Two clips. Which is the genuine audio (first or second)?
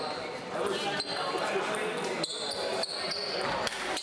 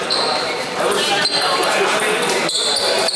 first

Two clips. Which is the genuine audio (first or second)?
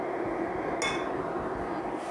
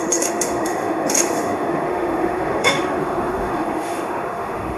first